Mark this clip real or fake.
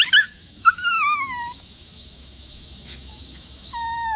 fake